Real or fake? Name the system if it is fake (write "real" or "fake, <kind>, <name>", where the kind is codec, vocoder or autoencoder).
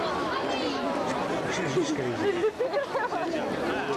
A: real